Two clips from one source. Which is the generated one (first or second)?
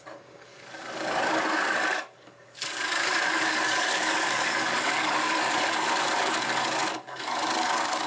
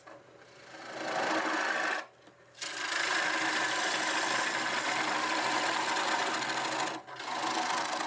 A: first